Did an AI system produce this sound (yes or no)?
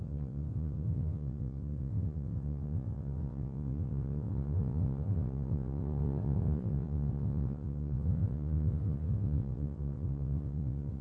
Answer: yes